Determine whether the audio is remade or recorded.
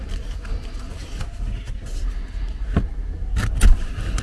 recorded